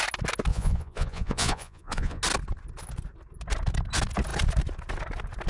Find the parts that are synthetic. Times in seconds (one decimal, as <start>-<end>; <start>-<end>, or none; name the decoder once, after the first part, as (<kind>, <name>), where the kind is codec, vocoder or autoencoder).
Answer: 0.5-2.2 (vocoder, Vocos)